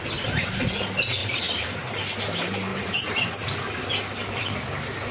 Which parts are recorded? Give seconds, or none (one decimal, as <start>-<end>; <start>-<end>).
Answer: 0.0-1.2; 2.0-2.7; 3.3-5.1